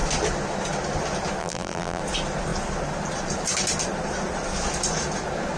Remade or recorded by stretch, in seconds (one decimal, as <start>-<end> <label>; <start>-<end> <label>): 0.0-1.4 recorded; 1.4-2.0 remade; 2.0-5.6 recorded